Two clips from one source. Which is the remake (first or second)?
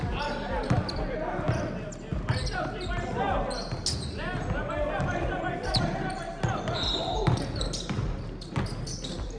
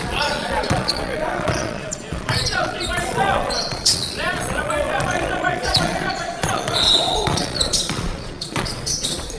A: second